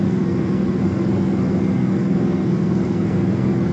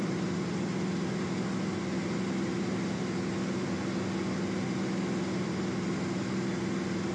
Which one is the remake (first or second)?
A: first